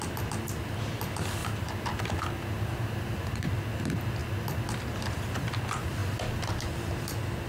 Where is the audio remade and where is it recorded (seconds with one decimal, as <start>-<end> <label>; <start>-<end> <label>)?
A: 0.0-1.4 recorded; 1.4-3.5 remade; 3.5-7.5 recorded